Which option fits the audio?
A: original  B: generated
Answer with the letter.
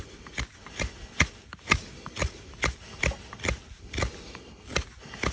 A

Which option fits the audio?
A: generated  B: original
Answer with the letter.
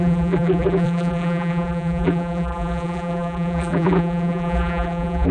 A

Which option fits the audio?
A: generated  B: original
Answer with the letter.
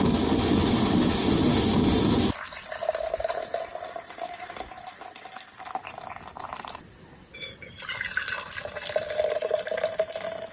A